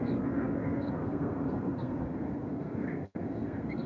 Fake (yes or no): yes